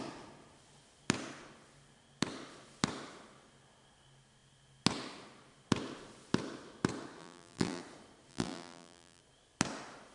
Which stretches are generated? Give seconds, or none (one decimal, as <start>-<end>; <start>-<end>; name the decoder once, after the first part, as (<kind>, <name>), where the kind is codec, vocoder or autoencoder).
7.2-7.8 (vocoder, BigVGAN v2); 8.3-9.2